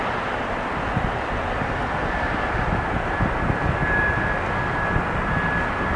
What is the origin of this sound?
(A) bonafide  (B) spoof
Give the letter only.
A